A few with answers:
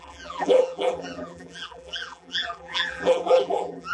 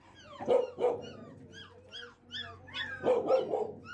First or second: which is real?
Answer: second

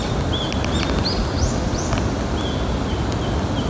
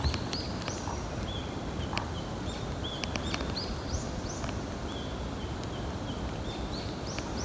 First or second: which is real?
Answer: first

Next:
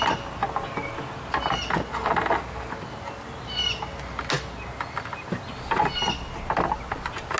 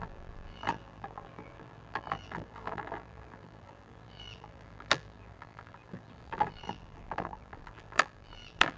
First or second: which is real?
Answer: first